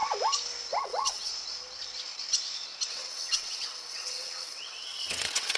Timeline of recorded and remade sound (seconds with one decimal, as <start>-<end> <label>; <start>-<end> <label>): 0.0-0.8 recorded; 0.8-1.3 remade; 1.3-2.9 recorded; 2.9-5.6 remade

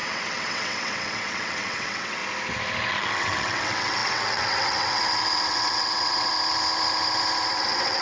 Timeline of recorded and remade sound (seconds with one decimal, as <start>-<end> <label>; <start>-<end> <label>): 0.0-2.2 remade; 2.2-2.9 recorded; 2.9-6.3 remade; 6.3-7.5 recorded; 7.5-8.0 remade

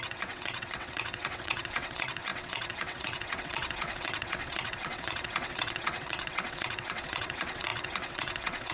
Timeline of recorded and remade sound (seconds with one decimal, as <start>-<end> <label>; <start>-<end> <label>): 0.0-8.7 remade

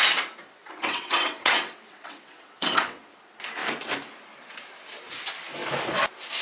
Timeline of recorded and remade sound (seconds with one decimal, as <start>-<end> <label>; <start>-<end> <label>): 0.0-0.6 recorded; 0.6-3.0 remade; 3.0-6.4 recorded

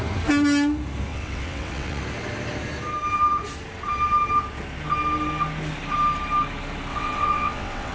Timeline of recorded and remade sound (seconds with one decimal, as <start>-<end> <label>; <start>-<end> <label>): 0.0-1.1 recorded; 1.1-2.0 remade; 2.0-6.9 recorded; 6.9-7.9 remade

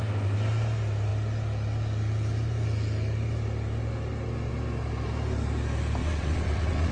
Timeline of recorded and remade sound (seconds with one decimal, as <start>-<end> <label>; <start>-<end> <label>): 0.0-6.0 recorded; 6.0-6.9 remade